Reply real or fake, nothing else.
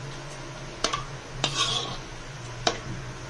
fake